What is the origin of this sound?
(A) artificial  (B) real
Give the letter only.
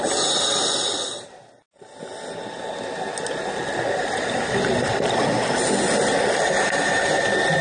B